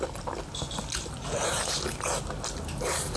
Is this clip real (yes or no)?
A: yes